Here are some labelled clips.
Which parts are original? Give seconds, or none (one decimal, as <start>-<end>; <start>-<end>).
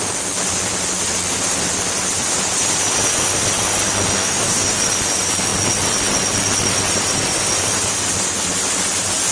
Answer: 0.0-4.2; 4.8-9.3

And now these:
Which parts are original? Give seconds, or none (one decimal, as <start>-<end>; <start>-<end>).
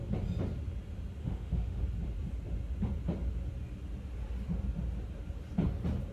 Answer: 0.0-1.2; 1.8-6.1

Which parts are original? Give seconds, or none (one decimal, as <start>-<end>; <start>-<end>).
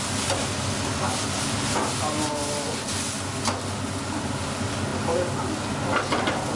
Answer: 0.0-6.6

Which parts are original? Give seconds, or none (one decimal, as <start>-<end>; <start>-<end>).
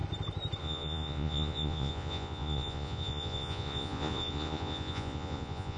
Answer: 0.0-0.6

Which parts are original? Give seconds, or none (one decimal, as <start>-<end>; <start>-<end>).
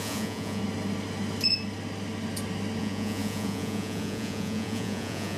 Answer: 0.6-2.8